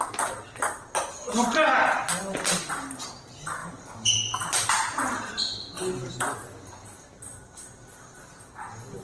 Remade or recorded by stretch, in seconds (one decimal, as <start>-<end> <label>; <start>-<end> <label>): 0.0-9.0 recorded